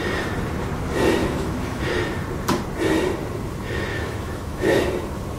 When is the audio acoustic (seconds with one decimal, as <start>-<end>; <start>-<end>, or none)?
0.0-1.2; 1.8-3.9; 4.8-5.4